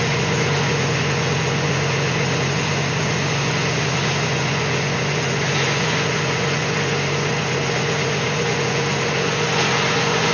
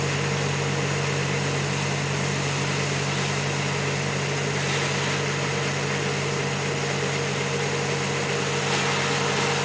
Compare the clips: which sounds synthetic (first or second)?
first